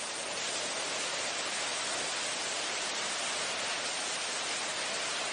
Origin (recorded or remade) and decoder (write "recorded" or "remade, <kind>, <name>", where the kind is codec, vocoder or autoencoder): recorded